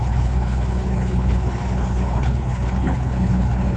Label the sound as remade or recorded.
remade